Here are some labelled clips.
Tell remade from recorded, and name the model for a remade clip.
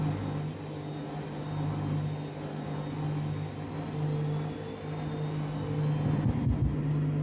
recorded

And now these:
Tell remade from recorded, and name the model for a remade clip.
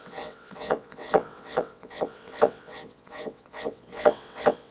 remade, vocoder, WaveNeXt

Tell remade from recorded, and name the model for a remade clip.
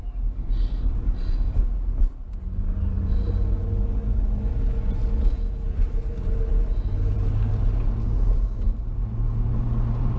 recorded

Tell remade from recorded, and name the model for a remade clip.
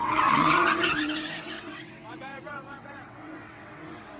remade, vocoder, WaveNeXt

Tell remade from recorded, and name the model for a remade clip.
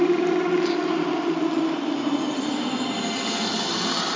recorded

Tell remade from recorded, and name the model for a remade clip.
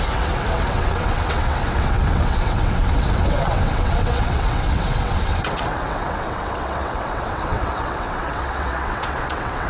remade, vocoder, WaveNeXt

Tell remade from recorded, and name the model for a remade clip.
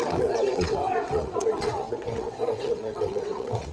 remade, vocoder, WaveNeXt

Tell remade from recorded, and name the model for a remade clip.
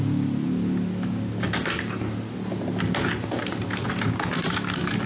recorded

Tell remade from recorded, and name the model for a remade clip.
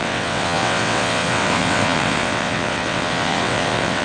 remade, vocoder, WaveNeXt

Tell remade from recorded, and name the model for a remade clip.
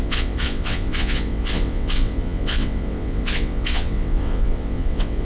remade, vocoder, WaveNeXt